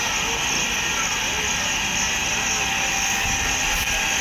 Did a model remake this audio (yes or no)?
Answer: no